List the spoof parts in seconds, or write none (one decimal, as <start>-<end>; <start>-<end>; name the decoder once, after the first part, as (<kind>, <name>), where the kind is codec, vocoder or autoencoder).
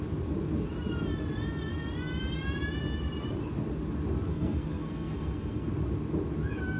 4.3-5.7 (codec, SNAC)